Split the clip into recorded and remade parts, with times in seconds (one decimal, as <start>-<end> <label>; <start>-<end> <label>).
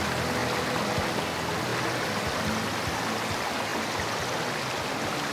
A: 0.0-5.3 recorded